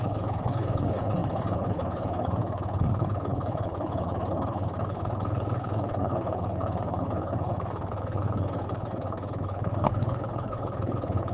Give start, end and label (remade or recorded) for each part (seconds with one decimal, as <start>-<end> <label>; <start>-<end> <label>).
0.0-11.3 remade